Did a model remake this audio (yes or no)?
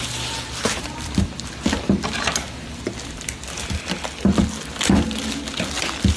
no